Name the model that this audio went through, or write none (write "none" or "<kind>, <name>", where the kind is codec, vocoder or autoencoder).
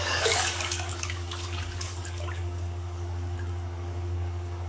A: codec, DAC